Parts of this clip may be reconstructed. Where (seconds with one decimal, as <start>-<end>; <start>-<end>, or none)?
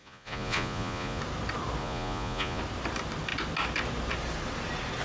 0.0-1.2; 1.8-2.6